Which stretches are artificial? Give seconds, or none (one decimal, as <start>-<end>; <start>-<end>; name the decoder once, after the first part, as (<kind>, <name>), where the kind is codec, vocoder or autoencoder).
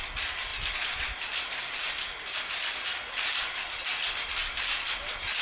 none